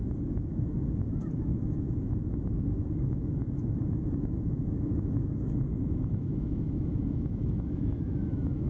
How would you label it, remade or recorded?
remade